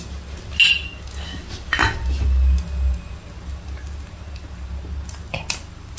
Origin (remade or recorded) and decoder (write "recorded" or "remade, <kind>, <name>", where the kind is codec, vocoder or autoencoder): recorded